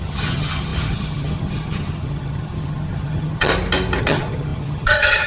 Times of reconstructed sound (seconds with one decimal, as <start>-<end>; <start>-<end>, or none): 0.0-3.5; 4.0-5.3